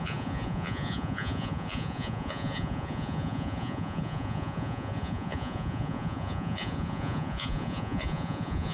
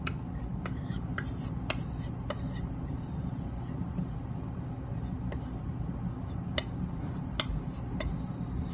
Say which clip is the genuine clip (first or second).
second